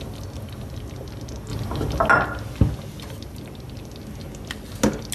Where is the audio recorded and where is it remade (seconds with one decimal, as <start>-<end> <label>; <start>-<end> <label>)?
0.0-5.1 recorded